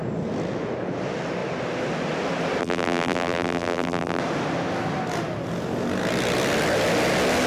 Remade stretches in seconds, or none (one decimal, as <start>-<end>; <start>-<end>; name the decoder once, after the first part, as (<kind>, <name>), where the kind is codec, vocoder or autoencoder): 2.6-4.2 (vocoder, BigVGAN v2)